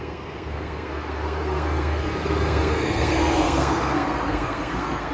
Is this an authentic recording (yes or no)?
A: no